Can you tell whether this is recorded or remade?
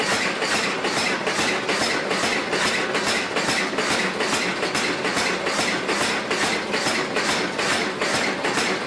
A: recorded